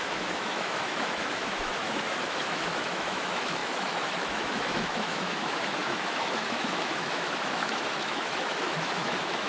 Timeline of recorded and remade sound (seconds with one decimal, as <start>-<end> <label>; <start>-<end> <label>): 0.0-9.5 remade